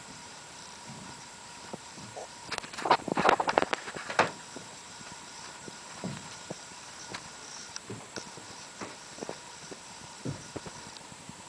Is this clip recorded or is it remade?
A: remade